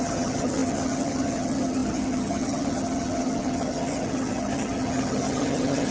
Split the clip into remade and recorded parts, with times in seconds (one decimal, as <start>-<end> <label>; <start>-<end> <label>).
0.0-5.9 remade